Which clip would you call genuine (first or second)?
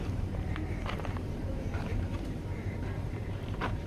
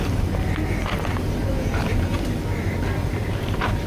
second